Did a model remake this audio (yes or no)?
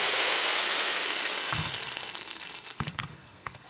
yes